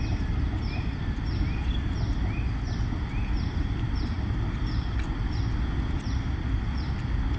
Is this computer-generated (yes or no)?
no